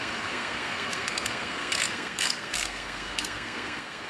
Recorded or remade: remade